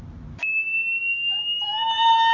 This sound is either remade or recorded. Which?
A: recorded